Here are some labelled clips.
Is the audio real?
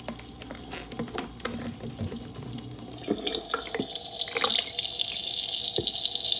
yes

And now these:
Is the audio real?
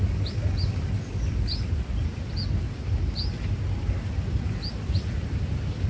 yes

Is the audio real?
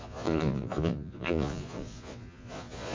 no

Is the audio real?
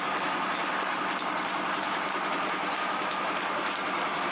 yes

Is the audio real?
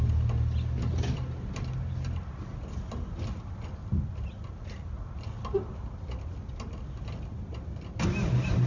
yes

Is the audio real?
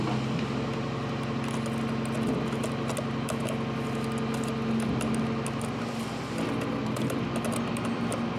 yes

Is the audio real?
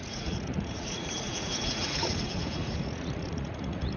no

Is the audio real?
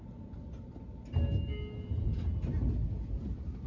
yes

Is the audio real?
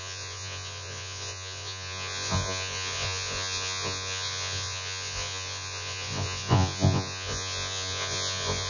no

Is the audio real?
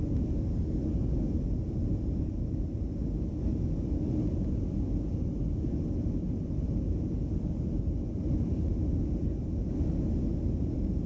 yes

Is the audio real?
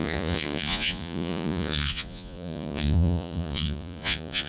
no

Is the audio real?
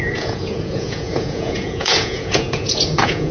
no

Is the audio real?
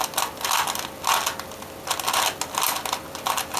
yes